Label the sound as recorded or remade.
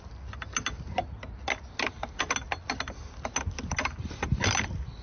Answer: recorded